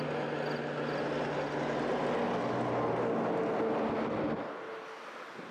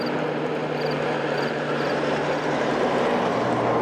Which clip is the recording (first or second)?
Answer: first